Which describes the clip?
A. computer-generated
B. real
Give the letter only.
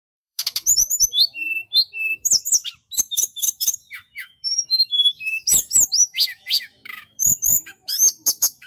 A